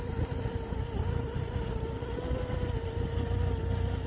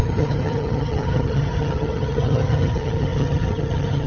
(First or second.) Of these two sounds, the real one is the first